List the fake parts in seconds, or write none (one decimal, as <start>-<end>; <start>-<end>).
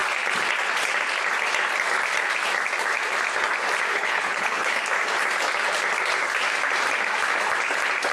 3.9-4.7